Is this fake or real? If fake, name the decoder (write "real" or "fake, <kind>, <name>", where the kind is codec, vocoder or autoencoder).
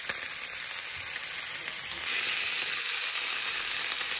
real